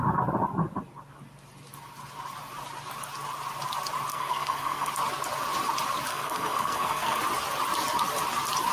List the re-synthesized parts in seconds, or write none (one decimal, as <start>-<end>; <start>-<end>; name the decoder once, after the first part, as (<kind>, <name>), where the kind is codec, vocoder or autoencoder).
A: 4.1-4.9 (codec, SNAC); 6.1-7.2